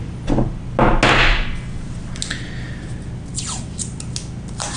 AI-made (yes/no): no